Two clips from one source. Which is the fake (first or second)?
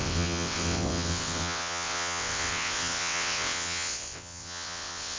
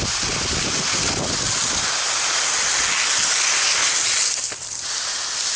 first